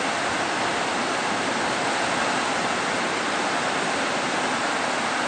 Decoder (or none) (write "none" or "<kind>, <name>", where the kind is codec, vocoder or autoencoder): vocoder, BigVGAN v2